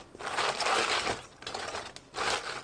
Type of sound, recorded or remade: recorded